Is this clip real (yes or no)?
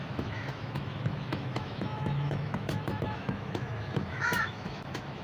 no